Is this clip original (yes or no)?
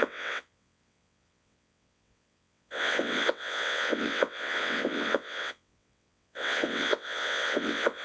no